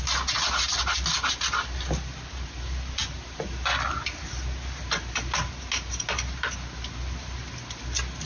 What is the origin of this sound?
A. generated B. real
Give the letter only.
B